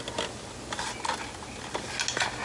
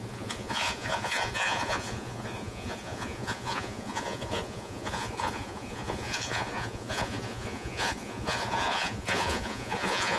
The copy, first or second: second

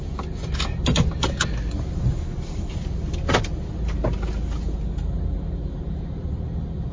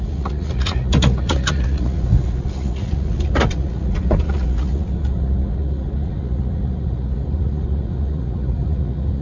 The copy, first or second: second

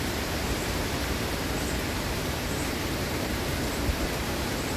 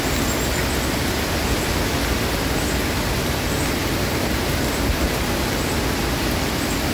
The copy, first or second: first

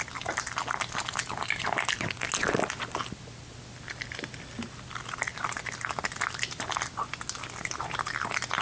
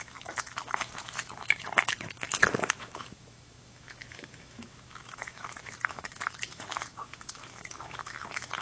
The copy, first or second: second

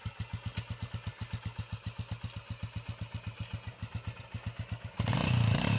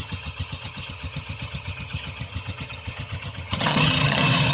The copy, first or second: second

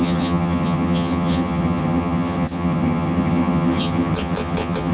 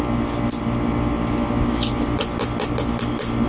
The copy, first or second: first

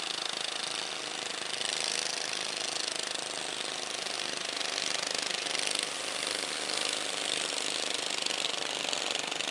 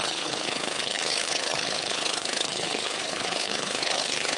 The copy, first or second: second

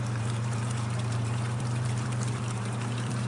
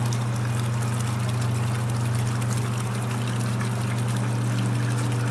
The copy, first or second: first